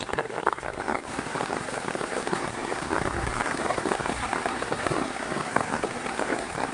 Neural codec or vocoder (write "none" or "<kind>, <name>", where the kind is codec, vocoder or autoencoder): codec, SNAC